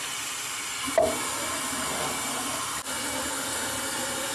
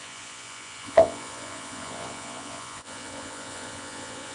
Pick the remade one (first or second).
second